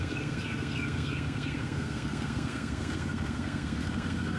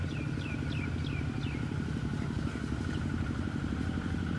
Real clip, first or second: second